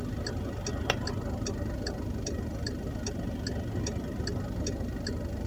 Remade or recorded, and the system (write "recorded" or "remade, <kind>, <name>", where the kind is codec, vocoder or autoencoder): recorded